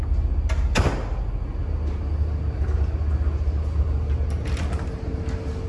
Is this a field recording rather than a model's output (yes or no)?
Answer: yes